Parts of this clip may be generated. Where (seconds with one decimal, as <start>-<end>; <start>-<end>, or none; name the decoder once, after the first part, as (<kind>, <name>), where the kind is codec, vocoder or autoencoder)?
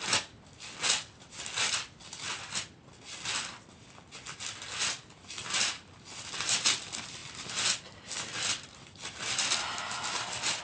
none